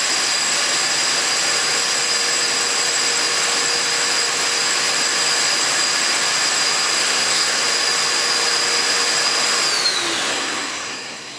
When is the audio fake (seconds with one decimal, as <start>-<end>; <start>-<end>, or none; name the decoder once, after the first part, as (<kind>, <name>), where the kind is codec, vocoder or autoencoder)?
7.0-7.6 (codec, SNAC); 10.3-11.4